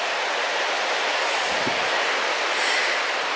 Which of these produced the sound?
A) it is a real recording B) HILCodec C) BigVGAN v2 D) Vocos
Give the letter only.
A